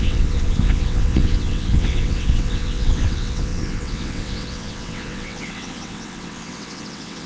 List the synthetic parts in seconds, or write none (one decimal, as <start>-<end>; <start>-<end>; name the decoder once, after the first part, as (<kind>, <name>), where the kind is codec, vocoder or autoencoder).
0.0-7.3 (vocoder, WaveNeXt)